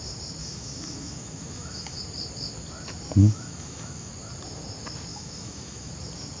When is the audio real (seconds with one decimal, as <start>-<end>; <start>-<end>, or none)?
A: 0.0-0.4; 2.0-3.2; 4.1-5.1; 5.9-6.4